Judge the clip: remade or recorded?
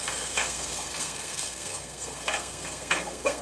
remade